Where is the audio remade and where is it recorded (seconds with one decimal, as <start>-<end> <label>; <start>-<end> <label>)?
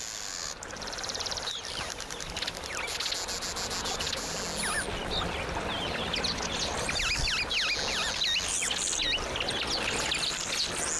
0.0-11.0 recorded